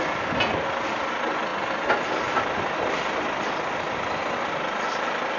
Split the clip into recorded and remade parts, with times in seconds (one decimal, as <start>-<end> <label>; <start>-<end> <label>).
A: 0.0-5.4 recorded